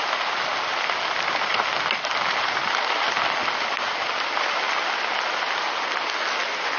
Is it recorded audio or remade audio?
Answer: recorded